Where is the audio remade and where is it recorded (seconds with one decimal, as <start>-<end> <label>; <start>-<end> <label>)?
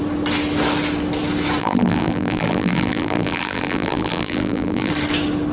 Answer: 0.0-1.6 recorded; 1.6-4.9 remade; 4.9-5.5 recorded